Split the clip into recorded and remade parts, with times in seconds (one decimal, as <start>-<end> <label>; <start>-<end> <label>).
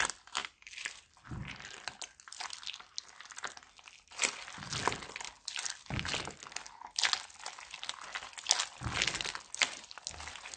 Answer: 0.0-10.6 recorded